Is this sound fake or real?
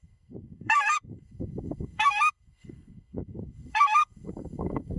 fake